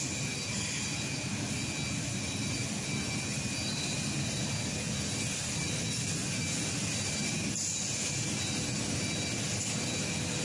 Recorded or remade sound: recorded